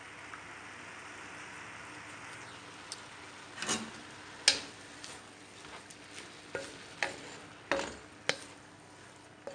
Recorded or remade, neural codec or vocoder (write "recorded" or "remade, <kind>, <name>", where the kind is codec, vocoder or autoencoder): recorded